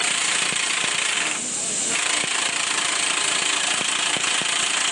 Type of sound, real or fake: real